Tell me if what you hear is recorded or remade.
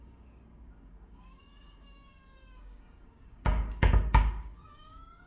remade